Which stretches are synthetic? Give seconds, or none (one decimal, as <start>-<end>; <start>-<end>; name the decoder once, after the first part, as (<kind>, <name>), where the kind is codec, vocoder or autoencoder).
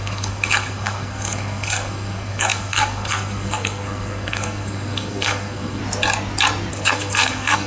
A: 0.0-5.8 (codec, SNAC); 6.7-7.7